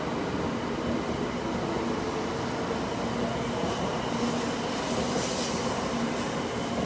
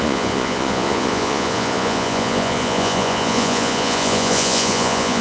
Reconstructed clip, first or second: second